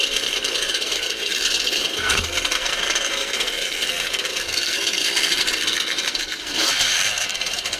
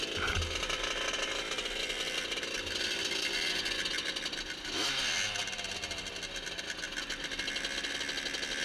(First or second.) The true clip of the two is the second